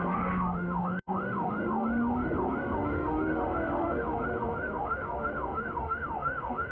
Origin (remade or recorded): remade